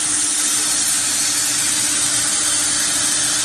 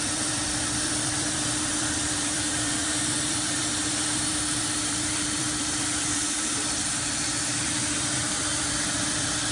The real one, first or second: first